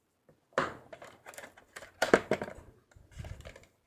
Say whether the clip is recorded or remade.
recorded